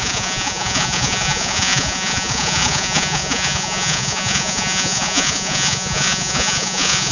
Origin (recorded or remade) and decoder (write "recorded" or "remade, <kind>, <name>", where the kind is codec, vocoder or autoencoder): remade, vocoder, Vocos